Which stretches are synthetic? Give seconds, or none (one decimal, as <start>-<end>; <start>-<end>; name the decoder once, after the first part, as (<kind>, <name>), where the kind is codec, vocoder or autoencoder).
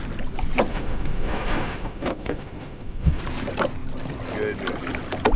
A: 0.7-3.2 (autoencoder, DAC-VAE)